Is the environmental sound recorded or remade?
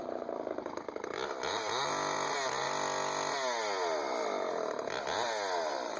recorded